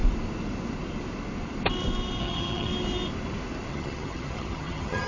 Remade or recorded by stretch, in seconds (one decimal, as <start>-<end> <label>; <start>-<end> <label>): 0.0-2.2 recorded; 2.2-2.7 remade; 2.7-3.7 recorded; 3.7-5.1 remade

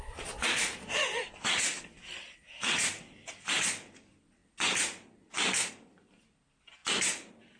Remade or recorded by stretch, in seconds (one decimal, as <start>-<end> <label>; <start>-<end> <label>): 0.0-7.6 recorded